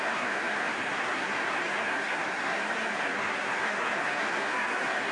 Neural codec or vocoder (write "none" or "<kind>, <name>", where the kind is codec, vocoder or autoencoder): codec, SNAC